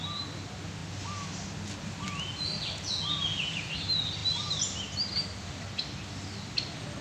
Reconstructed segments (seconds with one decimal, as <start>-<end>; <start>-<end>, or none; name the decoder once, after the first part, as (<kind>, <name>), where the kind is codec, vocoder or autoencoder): none